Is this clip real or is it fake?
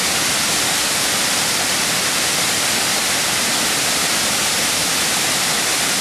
fake